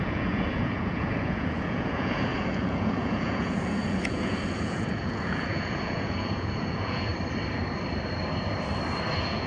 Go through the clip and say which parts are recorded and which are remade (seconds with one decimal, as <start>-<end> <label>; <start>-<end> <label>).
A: 0.0-7.1 remade; 7.1-9.1 recorded; 9.1-9.5 remade

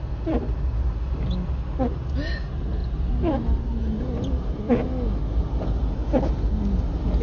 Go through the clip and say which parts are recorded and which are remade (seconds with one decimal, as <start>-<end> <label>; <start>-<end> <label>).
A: 0.0-7.2 recorded

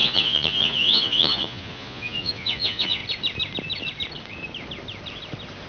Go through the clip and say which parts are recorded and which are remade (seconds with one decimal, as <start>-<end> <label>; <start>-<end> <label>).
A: 0.0-3.0 remade; 3.0-5.7 recorded

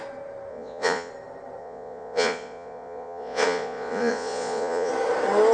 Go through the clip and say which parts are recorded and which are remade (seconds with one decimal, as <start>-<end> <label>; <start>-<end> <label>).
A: 0.0-0.5 recorded; 0.5-1.1 remade; 1.1-1.6 recorded; 1.6-4.9 remade; 4.9-5.5 recorded

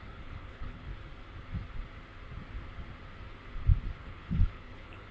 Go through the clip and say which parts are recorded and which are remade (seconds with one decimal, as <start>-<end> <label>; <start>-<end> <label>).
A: 0.0-0.9 remade; 0.9-4.0 recorded; 4.0-5.1 remade